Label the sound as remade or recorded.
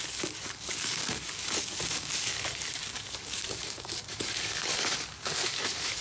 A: remade